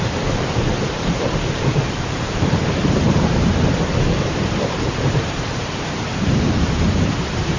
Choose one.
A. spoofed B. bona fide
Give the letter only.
A